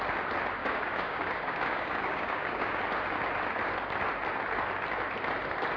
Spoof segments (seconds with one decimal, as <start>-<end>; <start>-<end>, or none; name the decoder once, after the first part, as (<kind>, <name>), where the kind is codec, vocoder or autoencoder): 0.6-2.8 (codec, DAC)